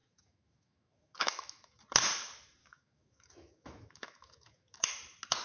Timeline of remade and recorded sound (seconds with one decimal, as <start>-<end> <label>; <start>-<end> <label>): 0.0-1.8 remade; 1.8-2.6 recorded; 2.6-4.9 remade; 4.9-5.4 recorded